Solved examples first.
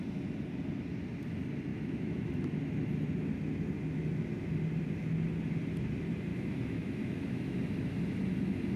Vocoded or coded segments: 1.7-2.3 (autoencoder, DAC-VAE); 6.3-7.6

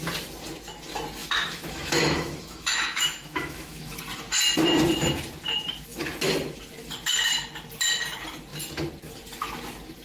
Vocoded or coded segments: 1.2-4.0 (autoencoder, DAC-VAE)

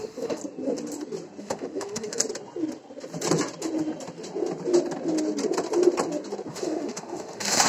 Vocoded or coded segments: 0.0-0.4 (autoencoder, DAC-VAE); 1.4-2.2; 6.5-7.7